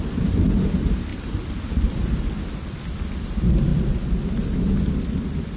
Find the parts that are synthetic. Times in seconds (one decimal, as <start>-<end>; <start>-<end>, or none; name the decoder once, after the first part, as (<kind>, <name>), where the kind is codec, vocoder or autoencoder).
none